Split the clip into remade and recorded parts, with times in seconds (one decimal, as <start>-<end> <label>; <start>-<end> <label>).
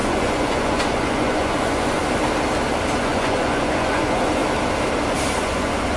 0.0-2.0 remade; 2.0-3.0 recorded; 3.0-4.4 remade; 4.4-5.4 recorded; 5.4-6.0 remade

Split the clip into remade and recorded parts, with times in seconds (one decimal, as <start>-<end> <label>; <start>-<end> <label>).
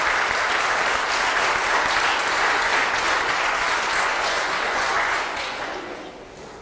0.0-2.1 recorded; 2.1-6.0 remade; 6.0-6.6 recorded